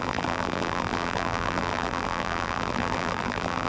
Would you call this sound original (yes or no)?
no